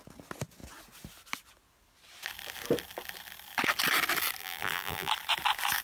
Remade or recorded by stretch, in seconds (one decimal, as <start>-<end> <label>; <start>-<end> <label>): 0.0-4.4 recorded; 4.4-5.1 remade; 5.1-5.8 recorded